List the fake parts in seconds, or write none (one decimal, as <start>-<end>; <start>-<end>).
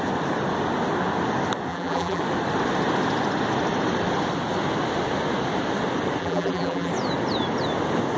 1.7-2.2; 6.2-6.9